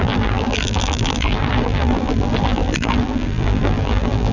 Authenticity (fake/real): fake